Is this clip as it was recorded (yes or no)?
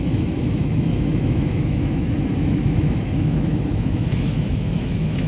no